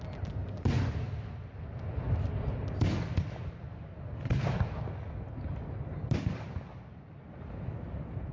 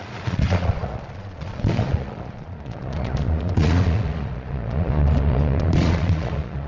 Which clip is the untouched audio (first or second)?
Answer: first